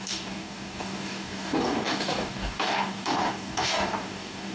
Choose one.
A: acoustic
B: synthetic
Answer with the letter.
B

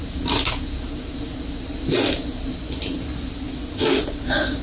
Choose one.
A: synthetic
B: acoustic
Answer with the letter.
B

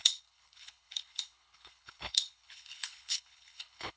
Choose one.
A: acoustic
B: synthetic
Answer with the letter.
B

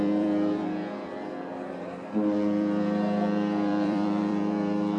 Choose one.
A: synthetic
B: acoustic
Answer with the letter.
A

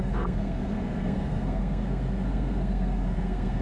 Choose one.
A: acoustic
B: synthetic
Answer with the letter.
B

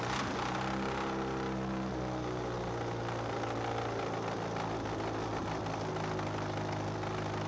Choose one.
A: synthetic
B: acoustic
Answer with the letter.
B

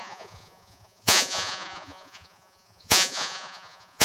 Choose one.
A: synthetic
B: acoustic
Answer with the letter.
A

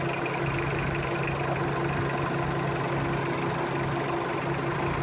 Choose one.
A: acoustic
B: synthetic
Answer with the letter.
A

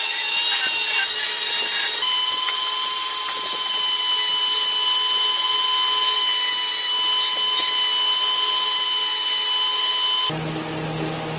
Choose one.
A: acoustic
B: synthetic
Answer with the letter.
A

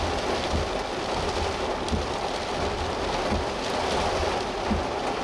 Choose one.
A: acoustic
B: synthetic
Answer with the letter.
A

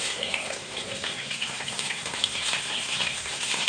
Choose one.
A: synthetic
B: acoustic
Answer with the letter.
A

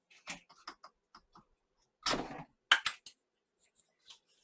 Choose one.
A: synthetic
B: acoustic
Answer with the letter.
B